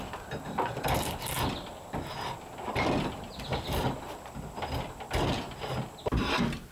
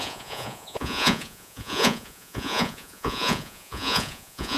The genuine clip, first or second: first